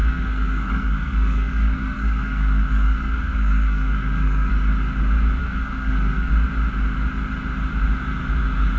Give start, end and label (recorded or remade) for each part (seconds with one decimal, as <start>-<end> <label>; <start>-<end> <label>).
0.0-4.5 remade; 4.5-5.4 recorded; 5.4-6.3 remade; 6.3-8.8 recorded